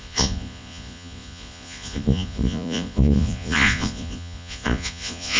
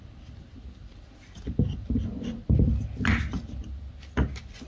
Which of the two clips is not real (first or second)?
first